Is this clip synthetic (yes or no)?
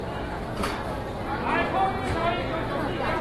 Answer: no